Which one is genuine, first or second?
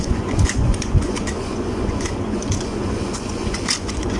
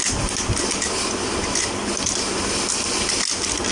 second